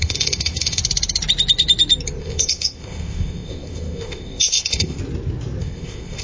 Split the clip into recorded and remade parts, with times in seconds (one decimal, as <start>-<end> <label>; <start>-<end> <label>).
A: 0.0-0.8 remade; 0.8-2.2 recorded; 2.2-5.0 remade; 5.0-5.6 recorded; 5.6-6.2 remade